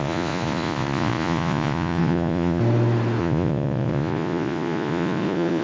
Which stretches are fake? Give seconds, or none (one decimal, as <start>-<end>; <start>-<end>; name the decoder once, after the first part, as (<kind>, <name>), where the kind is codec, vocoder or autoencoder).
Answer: 0.0-2.6 (vocoder, Vocos); 3.2-5.6